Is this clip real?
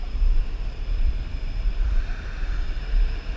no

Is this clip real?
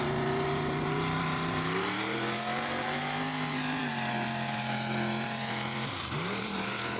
no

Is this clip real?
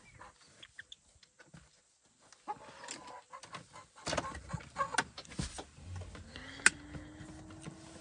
yes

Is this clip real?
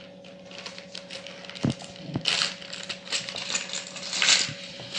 yes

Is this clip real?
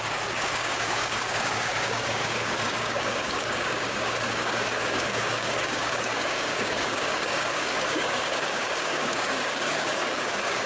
no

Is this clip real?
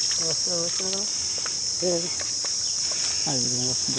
yes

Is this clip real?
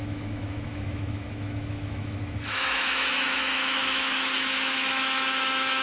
no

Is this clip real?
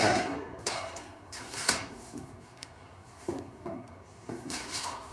no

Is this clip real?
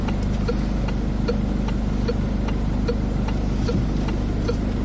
yes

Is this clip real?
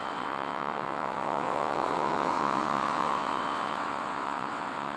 no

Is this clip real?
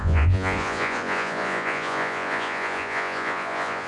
no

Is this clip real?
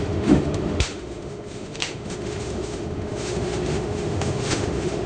no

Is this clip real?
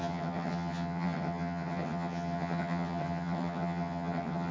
no